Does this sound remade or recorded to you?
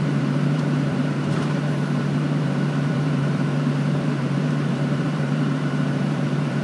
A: remade